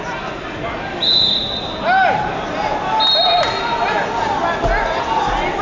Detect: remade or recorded recorded